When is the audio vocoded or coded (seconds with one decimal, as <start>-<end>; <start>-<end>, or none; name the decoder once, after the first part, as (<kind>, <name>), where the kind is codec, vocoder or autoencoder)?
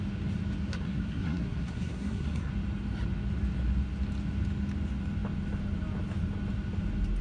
0.7-2.5 (codec, SNAC)